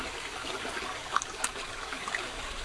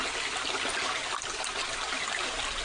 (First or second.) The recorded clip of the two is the second